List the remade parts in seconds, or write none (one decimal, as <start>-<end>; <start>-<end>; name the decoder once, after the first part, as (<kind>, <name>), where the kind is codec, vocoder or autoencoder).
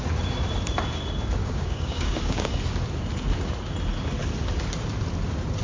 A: 1.4-2.5 (codec, DAC)